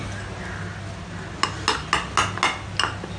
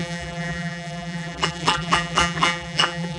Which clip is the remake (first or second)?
second